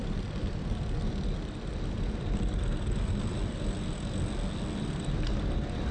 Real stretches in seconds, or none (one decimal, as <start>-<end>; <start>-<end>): 0.0-5.9